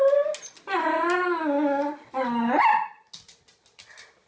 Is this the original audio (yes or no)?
yes